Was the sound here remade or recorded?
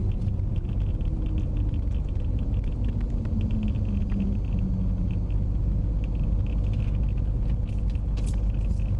recorded